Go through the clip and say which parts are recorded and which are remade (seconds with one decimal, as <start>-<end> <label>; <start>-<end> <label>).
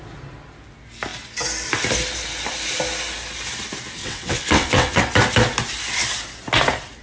0.0-4.0 recorded; 4.0-5.0 remade; 5.0-7.0 recorded